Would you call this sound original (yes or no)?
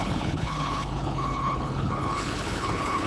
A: no